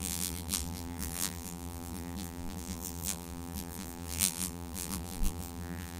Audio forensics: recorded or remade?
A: remade